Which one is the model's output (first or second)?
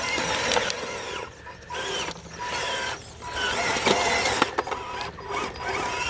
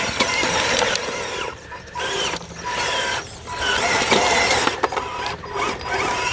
second